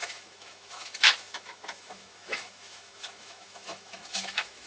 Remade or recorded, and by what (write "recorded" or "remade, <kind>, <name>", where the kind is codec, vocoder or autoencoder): remade, autoencoder, DAC-VAE